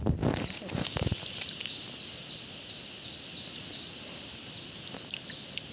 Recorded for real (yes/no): yes